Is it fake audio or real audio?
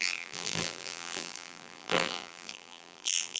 fake